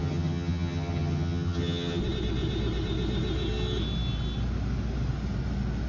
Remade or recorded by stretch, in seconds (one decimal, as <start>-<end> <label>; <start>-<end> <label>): 0.0-2.0 remade; 2.0-5.9 recorded